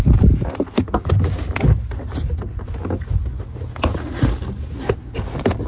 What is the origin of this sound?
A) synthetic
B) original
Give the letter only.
B